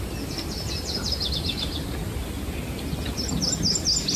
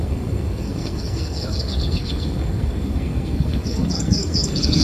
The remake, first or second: second